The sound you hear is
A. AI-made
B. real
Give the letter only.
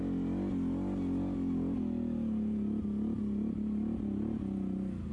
B